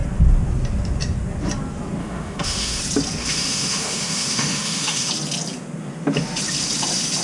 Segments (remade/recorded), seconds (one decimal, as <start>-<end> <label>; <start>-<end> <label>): 0.0-2.0 recorded; 2.0-2.8 remade; 2.8-3.2 recorded; 3.2-5.1 remade; 5.1-7.2 recorded